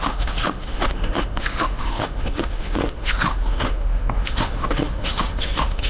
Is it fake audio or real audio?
fake